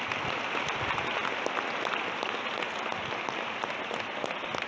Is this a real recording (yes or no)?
yes